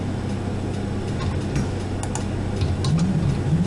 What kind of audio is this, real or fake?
real